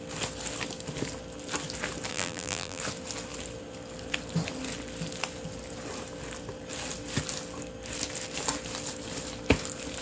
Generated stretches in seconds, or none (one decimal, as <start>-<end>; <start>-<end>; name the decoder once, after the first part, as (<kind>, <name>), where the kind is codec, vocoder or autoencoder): 2.1-2.8 (vocoder, BigVGAN v2)